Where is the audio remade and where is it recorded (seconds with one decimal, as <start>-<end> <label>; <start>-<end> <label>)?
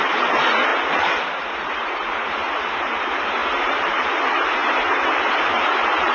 0.0-0.7 remade; 0.7-1.7 recorded; 1.7-6.1 remade